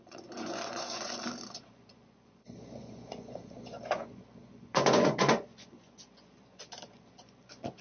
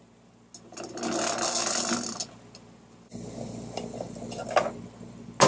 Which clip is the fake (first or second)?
first